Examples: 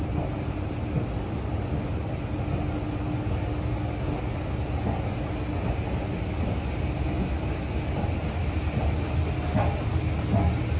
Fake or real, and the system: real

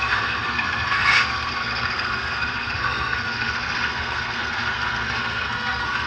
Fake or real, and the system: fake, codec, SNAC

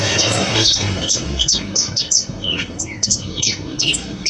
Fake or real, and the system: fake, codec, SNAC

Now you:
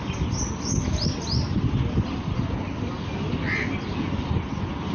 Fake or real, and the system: real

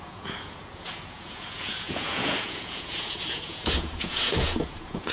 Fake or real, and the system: fake, vocoder, Vocos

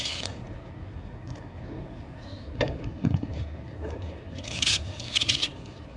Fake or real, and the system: fake, codec, SNAC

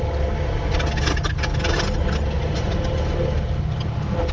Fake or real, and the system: real